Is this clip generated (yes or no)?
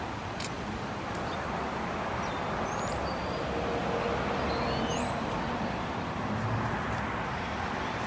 no